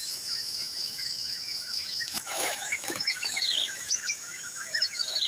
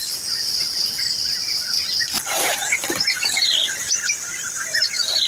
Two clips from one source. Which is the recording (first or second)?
second